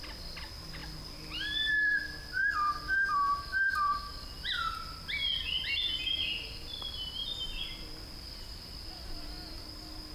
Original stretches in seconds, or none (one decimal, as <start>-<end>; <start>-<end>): 0.0-10.1